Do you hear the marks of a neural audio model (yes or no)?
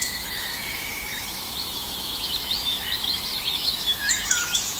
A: yes